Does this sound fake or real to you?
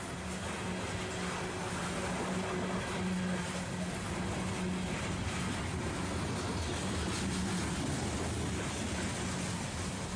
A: real